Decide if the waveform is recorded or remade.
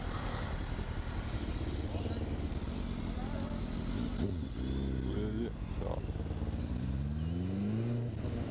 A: recorded